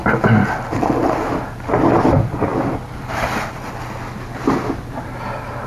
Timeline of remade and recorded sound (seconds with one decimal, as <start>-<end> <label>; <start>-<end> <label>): 0.0-5.7 recorded